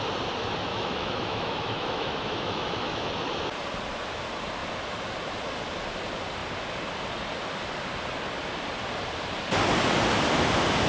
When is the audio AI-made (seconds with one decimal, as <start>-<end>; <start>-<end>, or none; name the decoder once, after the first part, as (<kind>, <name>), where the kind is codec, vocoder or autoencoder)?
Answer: 0.7-3.1 (autoencoder, DAC-VAE)